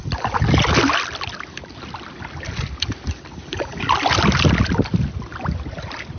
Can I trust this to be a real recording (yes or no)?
yes